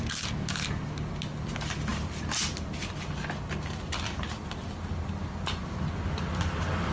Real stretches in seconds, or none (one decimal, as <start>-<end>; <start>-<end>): 0.0-6.9